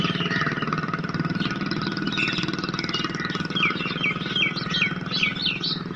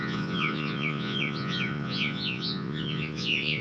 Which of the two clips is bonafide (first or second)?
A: first